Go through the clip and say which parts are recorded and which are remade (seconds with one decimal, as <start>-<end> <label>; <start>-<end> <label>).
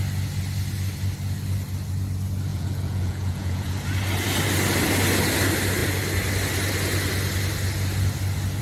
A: 0.0-2.5 recorded; 2.5-3.7 remade; 3.7-8.6 recorded